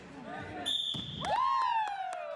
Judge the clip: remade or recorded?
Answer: recorded